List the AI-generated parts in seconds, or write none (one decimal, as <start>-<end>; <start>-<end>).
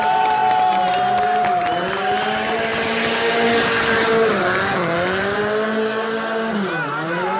none